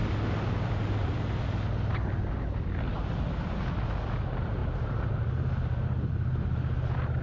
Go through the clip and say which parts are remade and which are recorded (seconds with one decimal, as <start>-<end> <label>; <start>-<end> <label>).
0.0-7.2 recorded